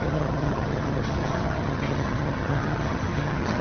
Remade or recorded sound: remade